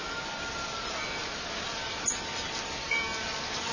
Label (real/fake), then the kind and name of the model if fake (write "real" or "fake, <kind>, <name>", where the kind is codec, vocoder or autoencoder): real